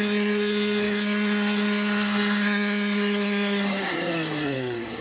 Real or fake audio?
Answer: fake